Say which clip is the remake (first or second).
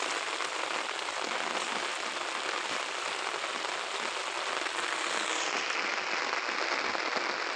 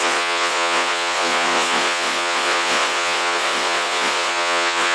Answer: second